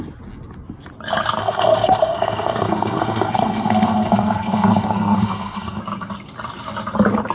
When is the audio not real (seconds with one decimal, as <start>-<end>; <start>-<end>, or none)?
1.4-5.8